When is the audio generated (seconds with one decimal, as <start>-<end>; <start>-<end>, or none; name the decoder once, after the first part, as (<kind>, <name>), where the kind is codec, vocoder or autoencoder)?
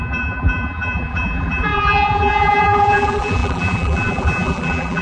0.0-5.0 (vocoder, BigVGAN v2)